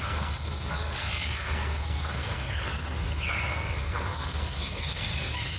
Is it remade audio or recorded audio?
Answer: remade